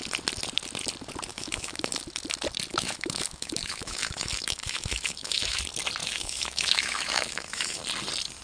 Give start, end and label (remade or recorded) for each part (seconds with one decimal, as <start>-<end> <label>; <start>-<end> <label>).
0.0-1.3 recorded; 1.3-1.9 remade; 1.9-2.7 recorded; 2.7-5.6 remade; 5.6-6.0 recorded; 6.0-7.8 remade; 7.8-8.4 recorded